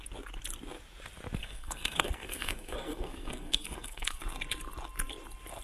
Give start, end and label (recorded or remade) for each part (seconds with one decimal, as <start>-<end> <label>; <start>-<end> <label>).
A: 0.0-1.4 recorded; 1.4-4.2 remade; 4.2-5.6 recorded